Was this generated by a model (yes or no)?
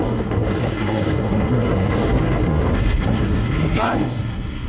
yes